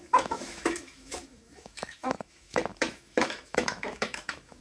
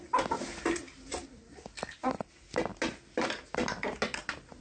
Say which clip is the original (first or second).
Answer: second